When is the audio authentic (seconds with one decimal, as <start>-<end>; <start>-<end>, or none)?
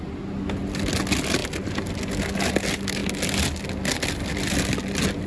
0.0-5.3